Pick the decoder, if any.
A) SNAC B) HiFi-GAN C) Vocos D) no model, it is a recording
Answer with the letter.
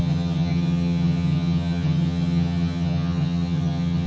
B